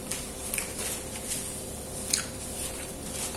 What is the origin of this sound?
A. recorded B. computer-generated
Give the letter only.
A